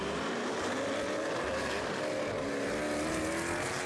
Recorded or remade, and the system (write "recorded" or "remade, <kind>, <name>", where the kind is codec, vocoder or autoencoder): recorded